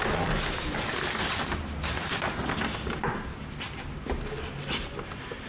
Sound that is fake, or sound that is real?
real